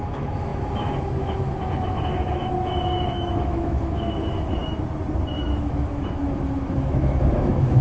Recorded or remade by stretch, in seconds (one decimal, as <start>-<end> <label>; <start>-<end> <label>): 0.0-4.6 remade; 4.6-5.3 recorded; 5.3-7.8 remade